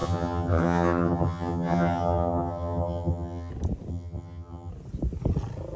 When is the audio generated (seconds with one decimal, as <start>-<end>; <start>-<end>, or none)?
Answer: 0.0-3.5; 3.9-4.7